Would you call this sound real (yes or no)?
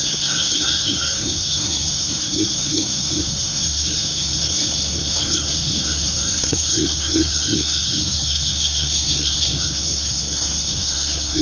no